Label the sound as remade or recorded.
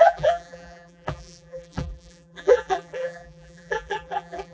remade